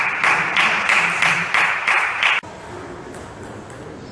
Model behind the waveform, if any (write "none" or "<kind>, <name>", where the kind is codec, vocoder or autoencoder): none